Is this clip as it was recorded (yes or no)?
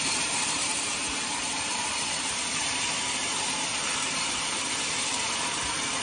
no